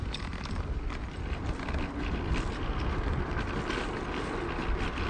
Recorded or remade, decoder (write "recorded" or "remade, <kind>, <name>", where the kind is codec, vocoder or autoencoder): recorded